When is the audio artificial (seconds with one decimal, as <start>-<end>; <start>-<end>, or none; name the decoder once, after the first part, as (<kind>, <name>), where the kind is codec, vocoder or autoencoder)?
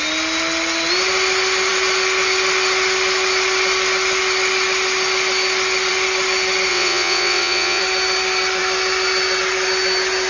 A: 6.7-7.8 (vocoder, WaveNeXt)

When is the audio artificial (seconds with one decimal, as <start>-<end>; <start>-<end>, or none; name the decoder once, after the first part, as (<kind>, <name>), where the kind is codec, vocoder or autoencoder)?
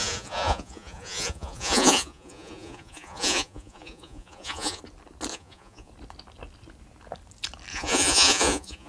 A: 0.0-4.8 (vocoder, Vocos); 5.3-5.9; 7.7-8.9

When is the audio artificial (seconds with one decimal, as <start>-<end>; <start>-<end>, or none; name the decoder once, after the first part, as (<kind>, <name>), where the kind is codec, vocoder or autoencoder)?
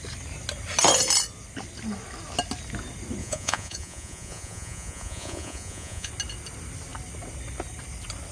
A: 3.2-6.1 (vocoder, Vocos)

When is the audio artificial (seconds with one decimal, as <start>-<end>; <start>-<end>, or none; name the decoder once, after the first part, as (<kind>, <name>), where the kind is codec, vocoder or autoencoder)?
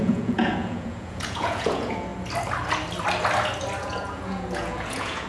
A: 0.0-2.1 (vocoder, Vocos); 3.8-5.3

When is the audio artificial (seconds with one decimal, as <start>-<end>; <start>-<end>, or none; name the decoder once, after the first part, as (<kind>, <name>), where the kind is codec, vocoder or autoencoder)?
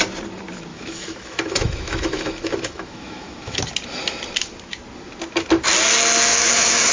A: 0.7-3.6 (autoencoder, DAC-VAE); 6.3-6.9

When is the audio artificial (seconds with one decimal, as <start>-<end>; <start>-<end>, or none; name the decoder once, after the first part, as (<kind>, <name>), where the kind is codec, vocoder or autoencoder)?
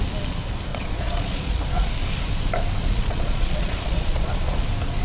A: 0.7-1.9 (vocoder, Vocos); 2.8-4.6